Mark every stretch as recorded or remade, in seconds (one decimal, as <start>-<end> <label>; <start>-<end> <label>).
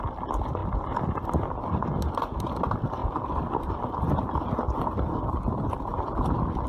0.0-6.7 recorded